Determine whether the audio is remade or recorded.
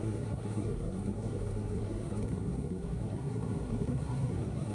remade